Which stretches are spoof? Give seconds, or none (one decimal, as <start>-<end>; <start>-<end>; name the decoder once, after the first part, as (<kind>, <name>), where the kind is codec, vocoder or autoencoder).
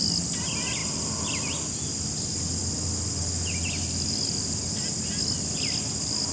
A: none